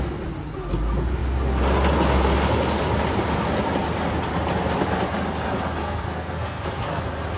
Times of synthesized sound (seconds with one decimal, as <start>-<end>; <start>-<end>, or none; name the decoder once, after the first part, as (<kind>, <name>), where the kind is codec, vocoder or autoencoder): 5.8-7.0 (codec, SNAC)